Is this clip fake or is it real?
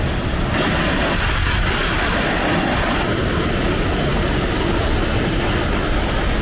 real